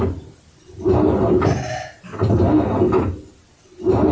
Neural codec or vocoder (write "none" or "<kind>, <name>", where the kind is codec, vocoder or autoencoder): none